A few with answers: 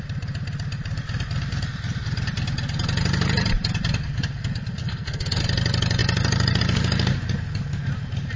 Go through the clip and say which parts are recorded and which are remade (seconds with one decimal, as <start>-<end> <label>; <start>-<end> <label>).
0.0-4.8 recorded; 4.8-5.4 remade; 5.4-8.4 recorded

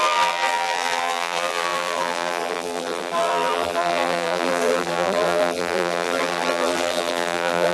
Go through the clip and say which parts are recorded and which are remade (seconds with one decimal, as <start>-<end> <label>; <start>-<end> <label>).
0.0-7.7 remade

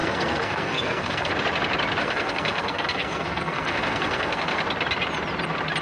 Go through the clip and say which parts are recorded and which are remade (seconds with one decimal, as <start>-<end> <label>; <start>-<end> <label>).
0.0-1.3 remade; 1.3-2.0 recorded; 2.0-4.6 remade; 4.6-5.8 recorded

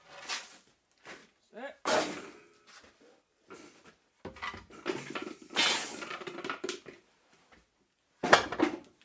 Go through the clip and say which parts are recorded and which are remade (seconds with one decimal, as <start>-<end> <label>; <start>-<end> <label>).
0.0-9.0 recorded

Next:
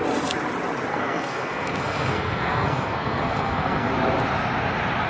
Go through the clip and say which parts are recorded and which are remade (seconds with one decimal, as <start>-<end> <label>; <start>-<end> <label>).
0.0-0.9 recorded; 0.9-3.9 remade; 3.9-5.1 recorded

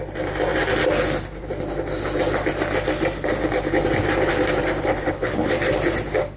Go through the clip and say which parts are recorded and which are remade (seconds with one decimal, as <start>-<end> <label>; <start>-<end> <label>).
0.0-4.9 recorded; 4.9-5.5 remade; 5.5-6.4 recorded

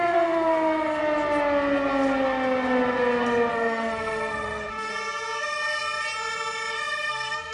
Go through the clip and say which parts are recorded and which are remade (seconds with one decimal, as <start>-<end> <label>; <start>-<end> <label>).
0.0-1.0 remade; 1.0-3.5 recorded; 3.5-4.9 remade; 4.9-7.1 recorded; 7.1-7.5 remade